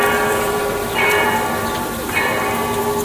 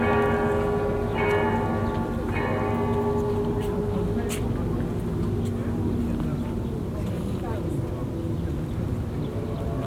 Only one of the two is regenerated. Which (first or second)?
first